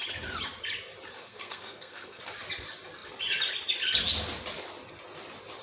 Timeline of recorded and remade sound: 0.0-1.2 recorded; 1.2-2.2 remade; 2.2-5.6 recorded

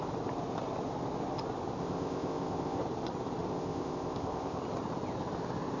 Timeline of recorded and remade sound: 0.0-1.8 recorded; 1.8-2.8 remade; 2.8-3.5 recorded; 3.5-4.6 remade; 4.6-5.8 recorded